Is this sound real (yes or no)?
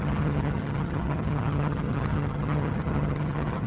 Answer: no